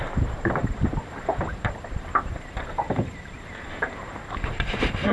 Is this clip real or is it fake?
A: fake